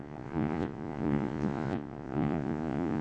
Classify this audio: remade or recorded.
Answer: remade